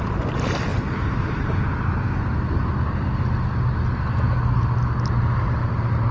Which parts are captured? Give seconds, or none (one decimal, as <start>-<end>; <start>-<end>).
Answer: 0.0-6.1